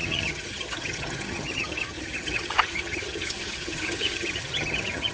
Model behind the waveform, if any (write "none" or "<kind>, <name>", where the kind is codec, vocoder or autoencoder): vocoder, HiFi-GAN